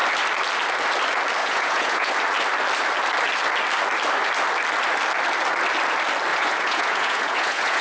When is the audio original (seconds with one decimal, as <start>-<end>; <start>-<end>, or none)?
0.0-1.4; 2.1-6.3